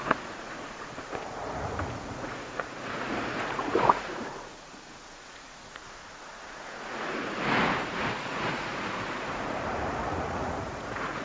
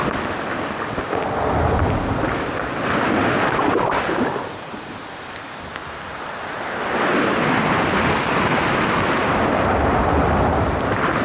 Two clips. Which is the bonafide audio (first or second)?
second